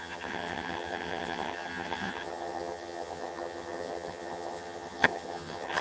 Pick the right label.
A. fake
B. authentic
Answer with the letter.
A